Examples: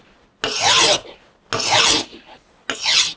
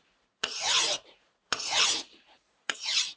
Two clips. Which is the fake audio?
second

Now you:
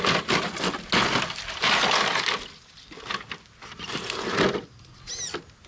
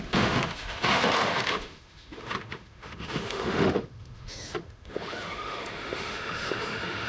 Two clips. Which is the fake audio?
second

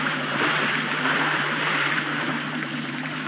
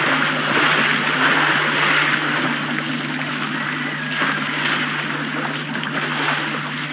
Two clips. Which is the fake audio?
first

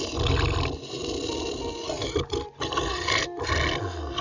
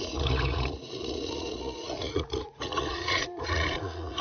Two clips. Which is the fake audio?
second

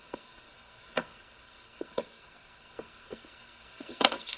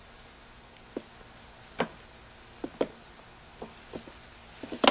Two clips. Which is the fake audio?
first